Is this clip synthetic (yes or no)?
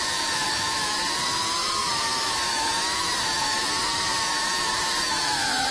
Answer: yes